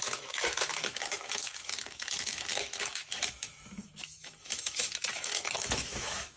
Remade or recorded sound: remade